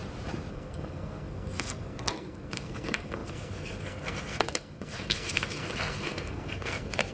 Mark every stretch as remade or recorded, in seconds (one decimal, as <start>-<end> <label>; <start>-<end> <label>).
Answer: 0.0-0.5 recorded; 0.5-7.1 remade